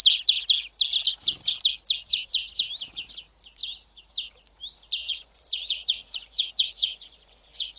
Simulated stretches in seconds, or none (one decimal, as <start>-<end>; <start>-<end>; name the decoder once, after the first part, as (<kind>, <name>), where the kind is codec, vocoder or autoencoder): 5.0-7.8 (vocoder, Vocos)